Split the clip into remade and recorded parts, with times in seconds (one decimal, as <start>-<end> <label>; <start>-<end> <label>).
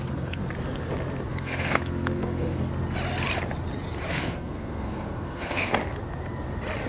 0.0-0.4 remade; 0.4-1.3 recorded; 1.3-2.7 remade; 2.7-4.1 recorded; 4.1-5.8 remade; 5.8-6.9 recorded